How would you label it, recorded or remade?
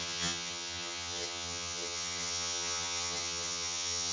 remade